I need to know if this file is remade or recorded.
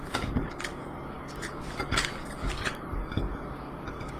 remade